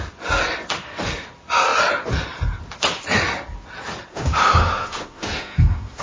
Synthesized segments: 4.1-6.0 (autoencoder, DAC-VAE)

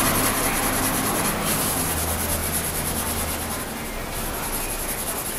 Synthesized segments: none

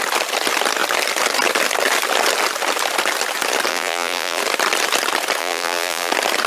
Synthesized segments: 3.7-4.4 (vocoder, BigVGAN v2); 5.4-6.1

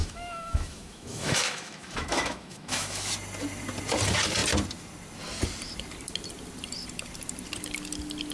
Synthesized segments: 0.0-3.1 (autoencoder, DAC-VAE)

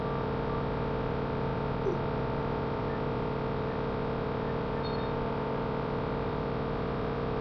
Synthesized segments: none